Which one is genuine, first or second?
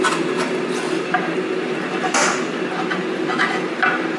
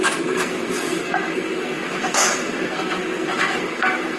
first